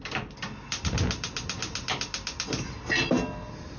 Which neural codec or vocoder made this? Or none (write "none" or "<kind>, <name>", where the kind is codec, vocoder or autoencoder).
none